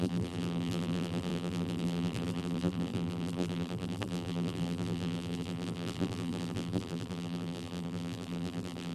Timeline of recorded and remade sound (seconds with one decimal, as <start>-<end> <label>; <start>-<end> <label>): 0.0-8.9 remade